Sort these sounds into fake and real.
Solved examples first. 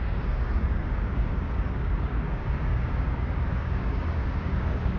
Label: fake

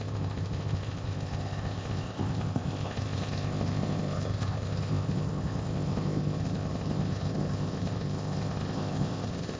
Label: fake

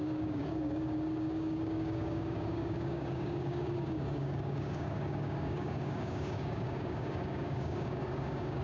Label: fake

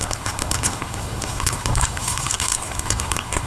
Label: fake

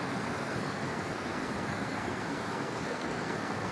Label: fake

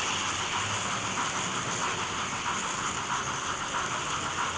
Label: real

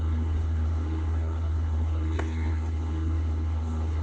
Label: fake